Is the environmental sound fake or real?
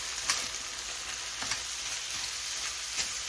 real